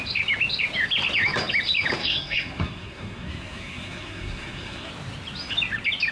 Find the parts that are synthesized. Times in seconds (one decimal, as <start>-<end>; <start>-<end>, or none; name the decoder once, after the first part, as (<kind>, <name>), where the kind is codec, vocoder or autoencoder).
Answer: 2.0-4.9 (codec, SNAC)

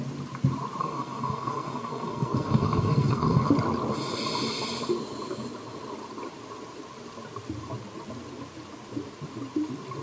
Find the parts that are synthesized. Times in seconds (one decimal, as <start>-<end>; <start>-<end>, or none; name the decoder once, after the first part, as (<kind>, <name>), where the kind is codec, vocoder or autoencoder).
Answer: 0.8-3.5 (codec, SNAC)